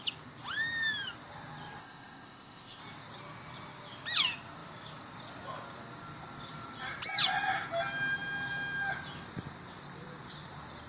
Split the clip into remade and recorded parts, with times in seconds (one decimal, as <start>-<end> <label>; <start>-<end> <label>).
0.0-1.8 recorded; 1.8-2.8 remade; 2.8-10.9 recorded